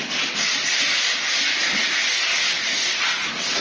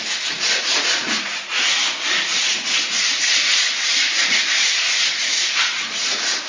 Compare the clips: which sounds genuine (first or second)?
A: first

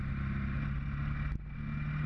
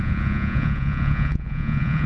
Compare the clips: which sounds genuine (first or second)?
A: first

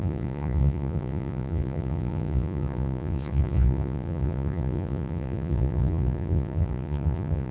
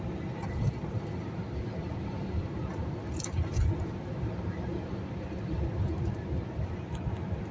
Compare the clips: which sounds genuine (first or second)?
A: second